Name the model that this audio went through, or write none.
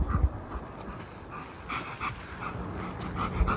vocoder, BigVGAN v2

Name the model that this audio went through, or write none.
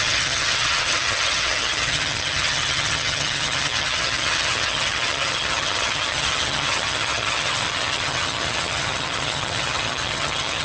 vocoder, HiFi-GAN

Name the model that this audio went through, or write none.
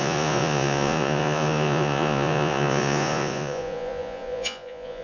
vocoder, Vocos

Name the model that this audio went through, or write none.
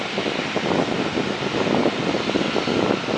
none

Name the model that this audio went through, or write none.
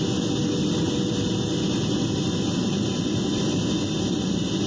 none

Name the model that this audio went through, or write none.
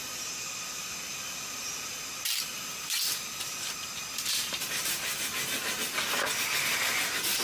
none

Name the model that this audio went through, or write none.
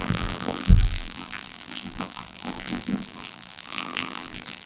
vocoder, BigVGAN v2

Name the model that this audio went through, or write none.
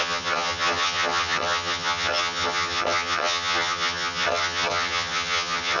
vocoder, HiFi-GAN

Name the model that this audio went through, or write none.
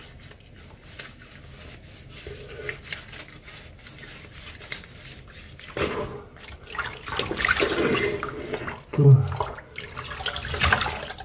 none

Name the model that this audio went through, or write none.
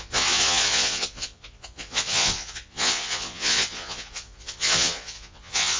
vocoder, Vocos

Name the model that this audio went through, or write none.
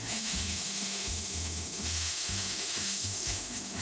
autoencoder, DAC-VAE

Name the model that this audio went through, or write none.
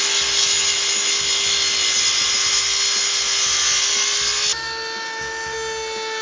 none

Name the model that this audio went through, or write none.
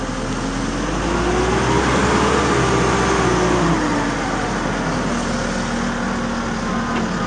none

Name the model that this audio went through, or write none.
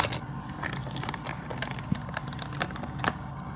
none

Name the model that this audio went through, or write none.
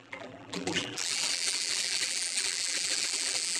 vocoder, BigVGAN v2